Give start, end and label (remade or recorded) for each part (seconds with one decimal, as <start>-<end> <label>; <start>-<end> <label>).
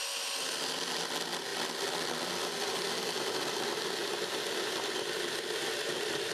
0.0-6.3 recorded